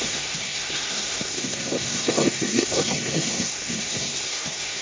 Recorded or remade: remade